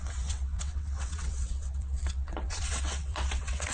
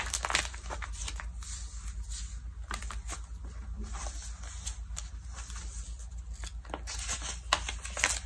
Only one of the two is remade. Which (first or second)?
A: first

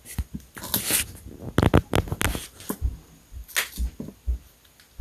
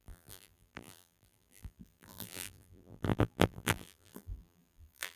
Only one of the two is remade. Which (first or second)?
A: second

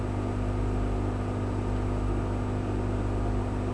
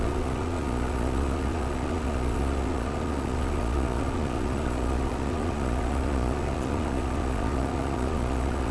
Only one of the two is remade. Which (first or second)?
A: second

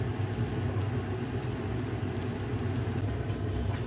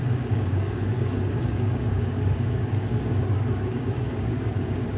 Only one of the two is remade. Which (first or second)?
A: second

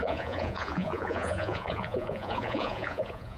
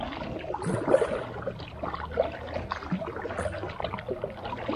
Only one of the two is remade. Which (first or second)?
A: first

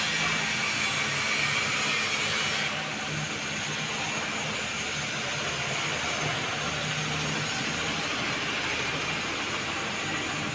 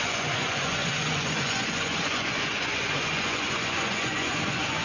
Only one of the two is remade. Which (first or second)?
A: second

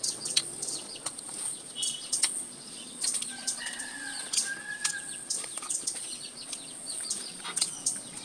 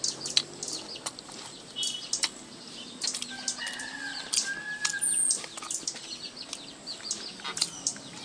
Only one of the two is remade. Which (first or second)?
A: first